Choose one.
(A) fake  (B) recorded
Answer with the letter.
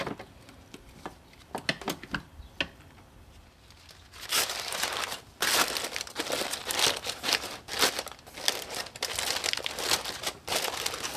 B